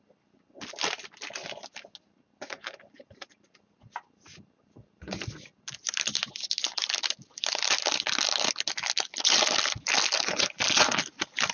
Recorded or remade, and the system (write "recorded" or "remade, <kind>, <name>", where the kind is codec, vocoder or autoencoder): recorded